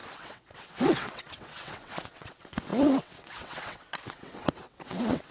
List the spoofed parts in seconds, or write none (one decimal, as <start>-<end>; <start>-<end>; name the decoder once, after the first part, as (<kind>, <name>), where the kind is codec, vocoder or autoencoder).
0.0-5.3 (vocoder, WaveNeXt)